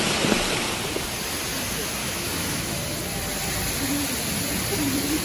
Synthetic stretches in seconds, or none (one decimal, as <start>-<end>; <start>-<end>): 2.0-2.8